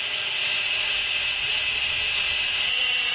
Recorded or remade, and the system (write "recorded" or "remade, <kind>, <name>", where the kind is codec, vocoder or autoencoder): remade, vocoder, Vocos